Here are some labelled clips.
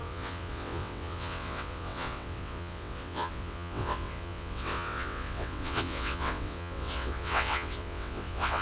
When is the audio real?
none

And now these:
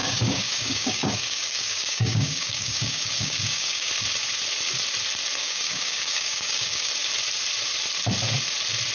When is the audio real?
3.9-5.4; 6.9-8.9